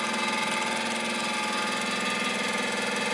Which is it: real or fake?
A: real